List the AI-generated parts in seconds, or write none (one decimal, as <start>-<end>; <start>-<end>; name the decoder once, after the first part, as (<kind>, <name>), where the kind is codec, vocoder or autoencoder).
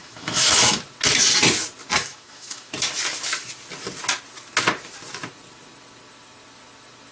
0.0-0.8 (autoencoder, DAC-VAE); 2.0-2.7